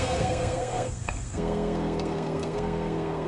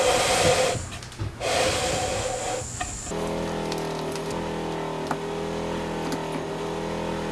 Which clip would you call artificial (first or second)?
first